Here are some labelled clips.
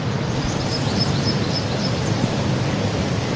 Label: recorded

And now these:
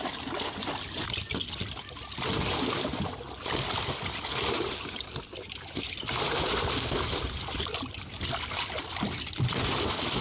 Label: recorded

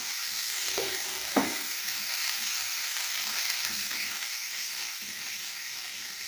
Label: remade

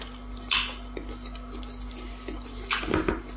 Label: recorded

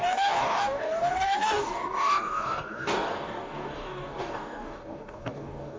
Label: remade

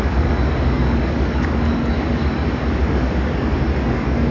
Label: remade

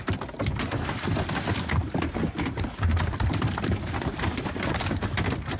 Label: recorded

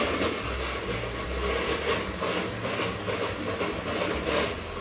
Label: recorded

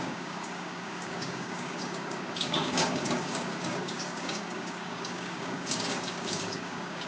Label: remade